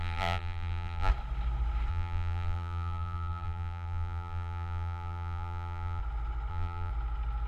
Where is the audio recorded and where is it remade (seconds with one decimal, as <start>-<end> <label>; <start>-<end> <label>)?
0.0-1.1 remade; 1.1-1.9 recorded; 1.9-6.0 remade; 6.0-6.5 recorded; 6.5-6.9 remade; 6.9-7.5 recorded